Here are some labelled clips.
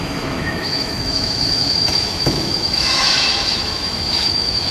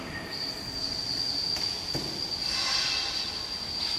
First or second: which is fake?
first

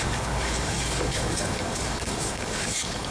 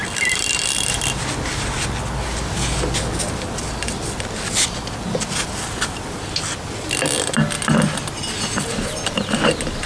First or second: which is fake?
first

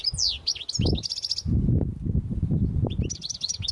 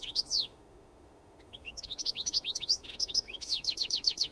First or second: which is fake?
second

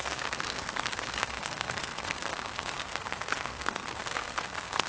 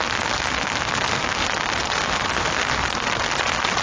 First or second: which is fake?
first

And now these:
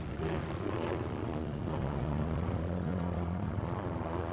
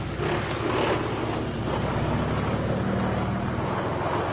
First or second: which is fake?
first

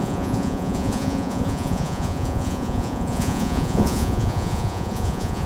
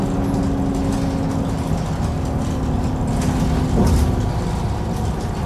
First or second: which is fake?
first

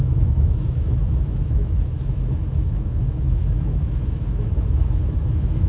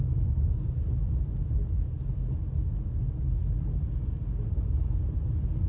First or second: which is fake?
first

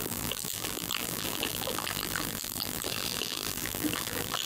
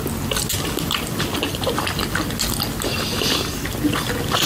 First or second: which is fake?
first